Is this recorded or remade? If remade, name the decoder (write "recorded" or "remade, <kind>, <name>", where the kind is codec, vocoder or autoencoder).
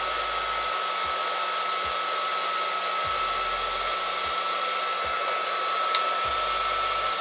recorded